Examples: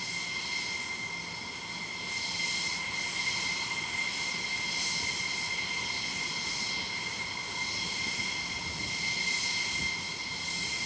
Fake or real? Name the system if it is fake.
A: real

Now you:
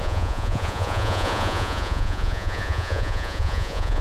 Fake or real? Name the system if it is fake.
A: fake, vocoder, Vocos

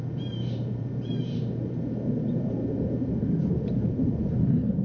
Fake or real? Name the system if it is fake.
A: fake, vocoder, BigVGAN v2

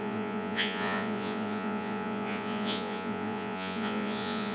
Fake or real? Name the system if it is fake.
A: fake, vocoder, Vocos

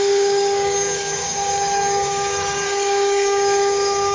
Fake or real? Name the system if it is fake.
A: fake, codec, DAC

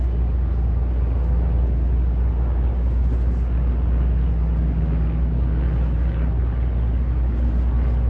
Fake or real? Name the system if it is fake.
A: real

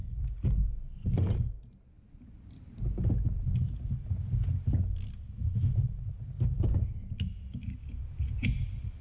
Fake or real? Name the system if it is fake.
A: real